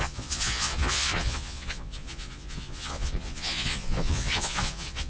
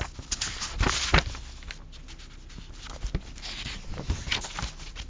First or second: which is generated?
first